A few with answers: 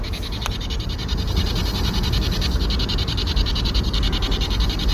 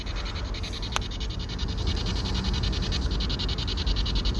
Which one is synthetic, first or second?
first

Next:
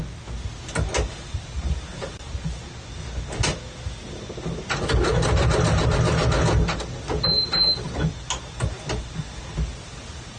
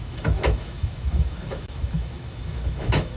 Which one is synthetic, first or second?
second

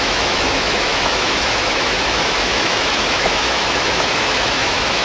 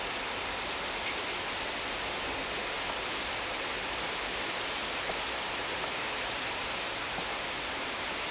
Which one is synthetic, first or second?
first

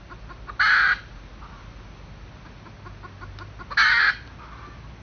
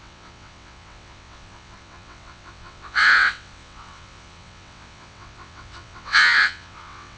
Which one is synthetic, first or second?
second